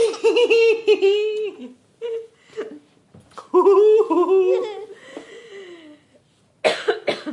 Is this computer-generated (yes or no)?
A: no